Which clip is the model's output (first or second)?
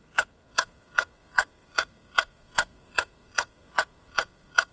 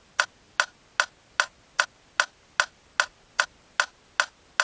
first